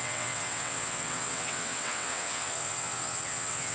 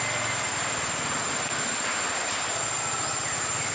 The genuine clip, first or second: second